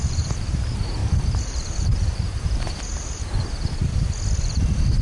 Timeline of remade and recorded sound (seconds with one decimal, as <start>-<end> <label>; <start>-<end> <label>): 0.0-3.8 remade; 3.8-5.0 recorded